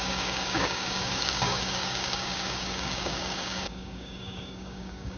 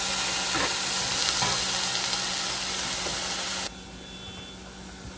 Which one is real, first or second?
second